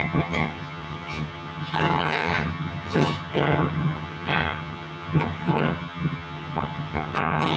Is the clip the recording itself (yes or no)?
no